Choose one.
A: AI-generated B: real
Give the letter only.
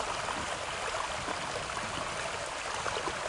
B